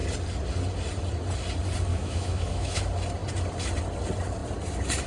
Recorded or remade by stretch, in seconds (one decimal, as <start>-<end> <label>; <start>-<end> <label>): 0.0-1.9 recorded; 1.9-2.8 remade; 2.8-5.1 recorded